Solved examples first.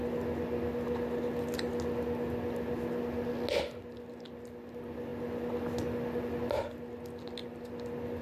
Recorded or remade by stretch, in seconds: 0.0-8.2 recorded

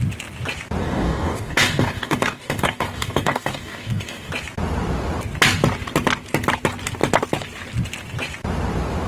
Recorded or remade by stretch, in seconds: 0.0-0.8 recorded; 0.8-4.3 remade; 4.3-9.1 recorded

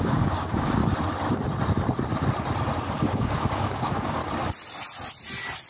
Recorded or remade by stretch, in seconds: 0.0-0.8 remade; 0.8-2.9 recorded; 2.9-4.2 remade; 4.2-5.7 recorded

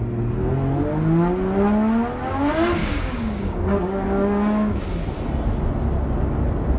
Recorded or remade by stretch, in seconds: 0.0-2.8 recorded; 2.8-4.8 remade; 4.8-6.8 recorded

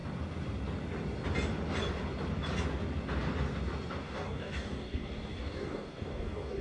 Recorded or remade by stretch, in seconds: 0.0-4.0 recorded; 4.0-6.6 remade